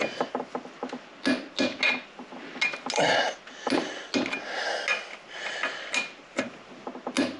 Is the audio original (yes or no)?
yes